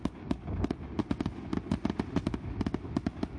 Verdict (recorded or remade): recorded